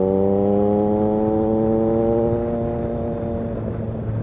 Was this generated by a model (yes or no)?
no